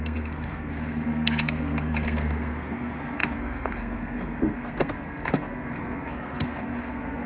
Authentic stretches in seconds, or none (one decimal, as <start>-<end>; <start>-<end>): none